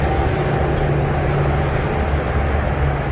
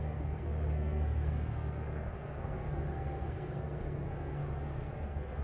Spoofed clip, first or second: second